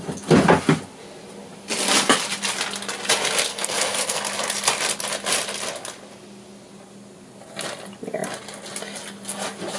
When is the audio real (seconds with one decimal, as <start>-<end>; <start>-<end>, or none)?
0.0-3.5; 4.2-9.8